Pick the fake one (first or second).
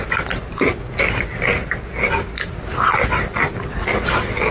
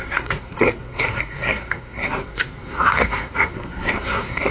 second